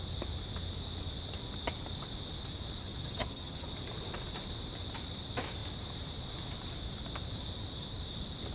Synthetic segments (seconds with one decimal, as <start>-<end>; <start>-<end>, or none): 2.8-3.7

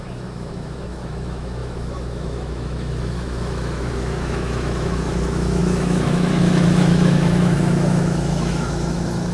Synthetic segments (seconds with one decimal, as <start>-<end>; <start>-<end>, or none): 0.0-9.3

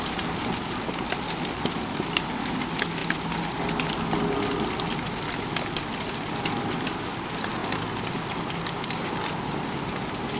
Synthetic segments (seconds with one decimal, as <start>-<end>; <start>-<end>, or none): none

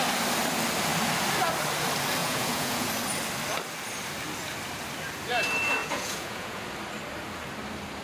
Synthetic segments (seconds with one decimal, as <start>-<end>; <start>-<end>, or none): 2.2-2.9; 5.8-6.6

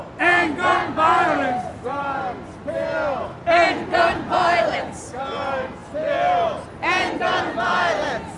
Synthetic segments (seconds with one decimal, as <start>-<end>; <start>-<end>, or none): none

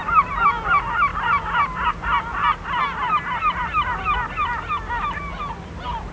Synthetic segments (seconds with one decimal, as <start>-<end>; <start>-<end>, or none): none

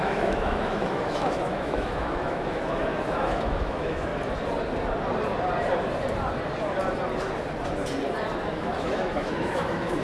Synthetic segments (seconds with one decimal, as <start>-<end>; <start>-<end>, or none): 0.0-4.1; 8.5-10.0

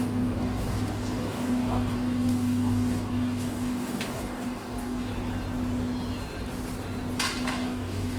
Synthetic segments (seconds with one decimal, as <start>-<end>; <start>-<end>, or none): 0.0-5.1; 7.5-8.2